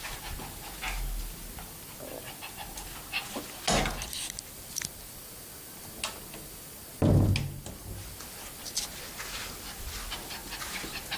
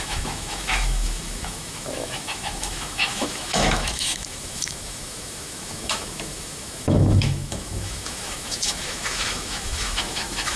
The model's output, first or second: second